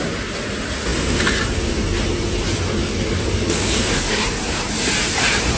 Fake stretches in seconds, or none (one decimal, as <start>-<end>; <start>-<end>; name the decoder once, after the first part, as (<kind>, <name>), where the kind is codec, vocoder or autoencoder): 2.8-4.2 (codec, DAC)